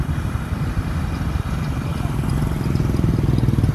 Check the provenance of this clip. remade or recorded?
recorded